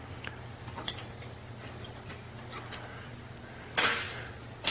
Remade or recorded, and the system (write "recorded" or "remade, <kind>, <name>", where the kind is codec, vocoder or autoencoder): recorded